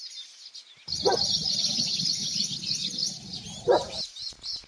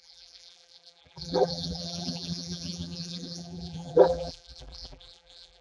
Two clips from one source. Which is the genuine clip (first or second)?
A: first